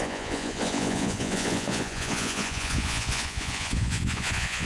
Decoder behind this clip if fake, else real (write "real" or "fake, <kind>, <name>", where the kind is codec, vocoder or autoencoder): fake, vocoder, Vocos